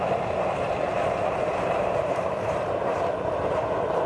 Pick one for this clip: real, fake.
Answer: fake